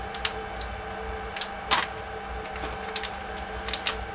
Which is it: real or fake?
real